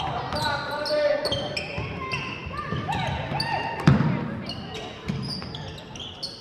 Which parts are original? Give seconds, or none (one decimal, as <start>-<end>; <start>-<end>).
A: 0.0-6.4